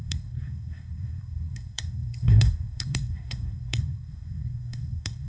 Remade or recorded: remade